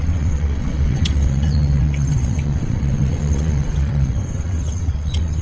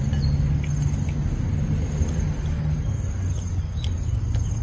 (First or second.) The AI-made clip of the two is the first